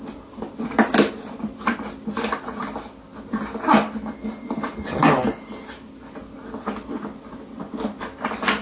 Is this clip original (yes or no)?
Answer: yes